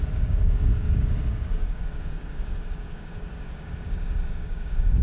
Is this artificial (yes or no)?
yes